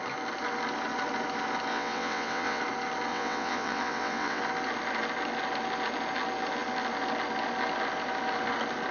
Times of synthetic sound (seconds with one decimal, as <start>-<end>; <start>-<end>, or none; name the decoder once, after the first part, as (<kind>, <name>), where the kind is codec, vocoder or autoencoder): 1.7-2.6 (vocoder, WaveNeXt); 3.1-4.4